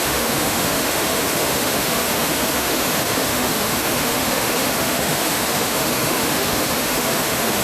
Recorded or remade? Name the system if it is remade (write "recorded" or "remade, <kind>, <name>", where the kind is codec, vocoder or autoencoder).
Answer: remade, autoencoder, DAC-VAE